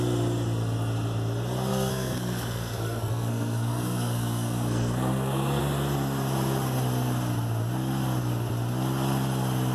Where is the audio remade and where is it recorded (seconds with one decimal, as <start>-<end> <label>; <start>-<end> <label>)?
0.0-1.7 recorded; 1.7-5.6 remade; 5.6-9.7 recorded